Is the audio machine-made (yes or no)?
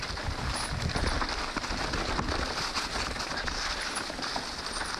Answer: no